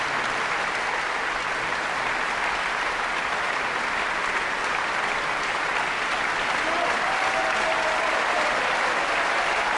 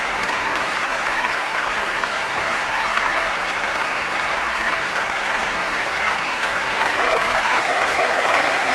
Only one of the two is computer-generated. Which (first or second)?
second